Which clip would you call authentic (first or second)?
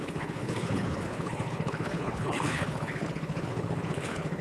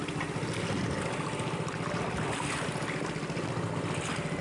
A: second